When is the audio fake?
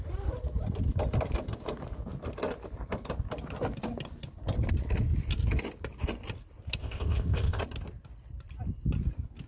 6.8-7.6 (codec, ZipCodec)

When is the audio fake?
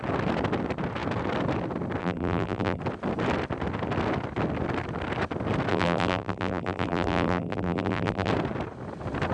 2.0-2.8 (vocoder, BigVGAN v2); 5.7-8.3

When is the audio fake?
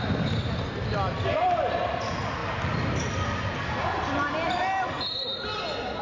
none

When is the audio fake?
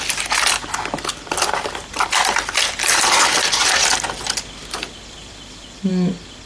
5.2-5.9 (vocoder, BigVGAN v2)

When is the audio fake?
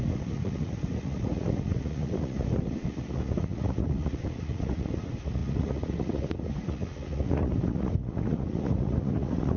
0.0-9.6 (vocoder, Vocos)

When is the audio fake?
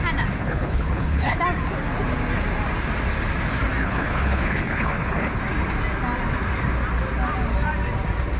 0.4-1.4 (codec, HILCodec); 3.8-5.4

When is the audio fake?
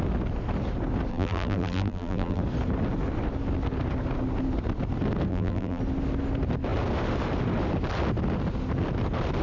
1.1-2.4 (vocoder, BigVGAN v2); 5.3-5.8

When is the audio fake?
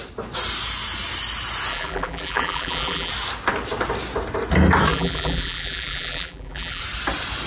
1.7-3.1 (vocoder, BigVGAN v2); 4.9-6.8